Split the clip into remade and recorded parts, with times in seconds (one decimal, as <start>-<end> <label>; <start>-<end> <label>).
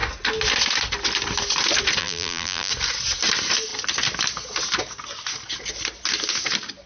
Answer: 0.0-2.0 recorded; 2.0-2.7 remade; 2.7-6.9 recorded